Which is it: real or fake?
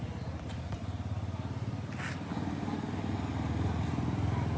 real